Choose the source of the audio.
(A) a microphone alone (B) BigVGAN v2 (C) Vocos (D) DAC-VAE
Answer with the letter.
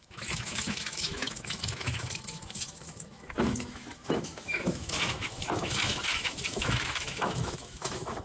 D